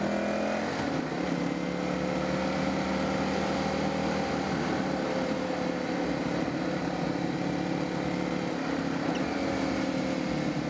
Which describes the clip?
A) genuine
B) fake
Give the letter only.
A